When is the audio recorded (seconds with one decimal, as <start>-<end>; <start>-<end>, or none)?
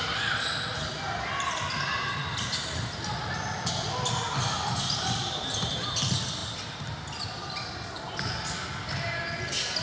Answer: 0.0-9.8